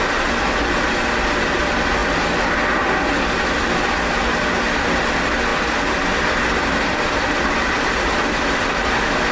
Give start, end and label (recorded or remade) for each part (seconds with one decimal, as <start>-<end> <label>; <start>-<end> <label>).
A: 0.0-9.3 recorded